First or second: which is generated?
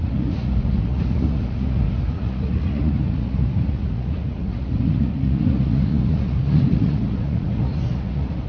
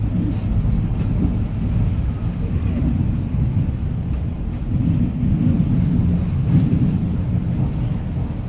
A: first